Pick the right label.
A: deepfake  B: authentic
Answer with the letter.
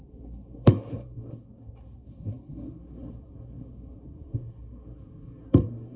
A